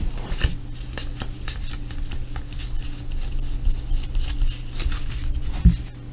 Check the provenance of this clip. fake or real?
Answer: real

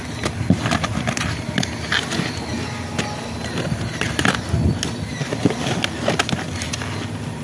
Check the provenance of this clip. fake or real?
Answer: real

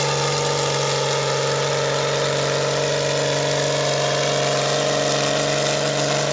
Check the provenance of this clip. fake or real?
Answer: real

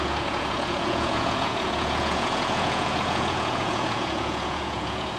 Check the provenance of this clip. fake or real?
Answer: fake